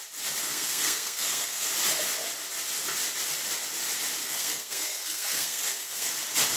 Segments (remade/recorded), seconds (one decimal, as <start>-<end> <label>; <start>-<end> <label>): 0.0-0.4 recorded; 0.4-1.7 remade; 1.7-4.2 recorded; 4.2-6.1 remade; 6.1-6.6 recorded